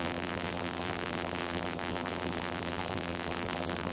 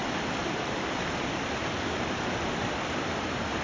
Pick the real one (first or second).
second